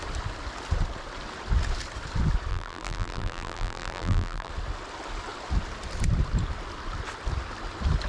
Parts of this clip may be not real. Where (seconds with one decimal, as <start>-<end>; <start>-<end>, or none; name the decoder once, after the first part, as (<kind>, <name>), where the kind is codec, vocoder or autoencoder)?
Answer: 2.5-4.5 (vocoder, BigVGAN v2)